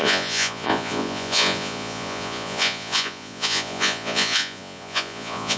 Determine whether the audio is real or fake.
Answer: fake